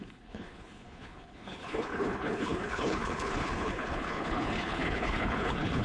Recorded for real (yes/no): no